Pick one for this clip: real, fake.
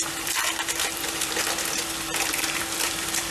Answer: fake